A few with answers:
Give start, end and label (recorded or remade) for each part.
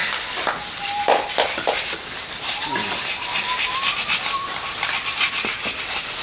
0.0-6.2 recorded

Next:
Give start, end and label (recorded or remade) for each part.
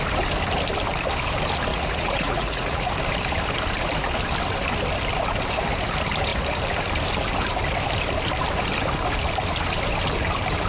0.0-1.7 recorded; 1.7-2.9 remade; 2.9-10.7 recorded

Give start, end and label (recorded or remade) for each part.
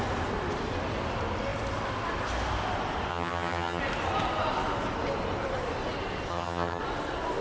0.0-3.1 recorded; 3.1-3.8 remade; 3.8-6.3 recorded; 6.3-6.8 remade; 6.8-7.4 recorded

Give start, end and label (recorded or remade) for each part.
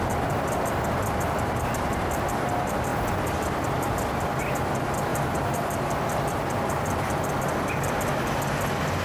0.0-5.1 recorded; 5.1-5.9 remade; 5.9-9.0 recorded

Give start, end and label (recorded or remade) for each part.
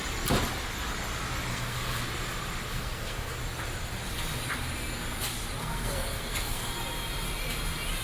0.0-1.5 recorded; 1.5-2.0 remade; 2.0-2.7 recorded; 2.7-3.4 remade; 3.4-5.6 recorded; 5.6-6.7 remade; 6.7-8.0 recorded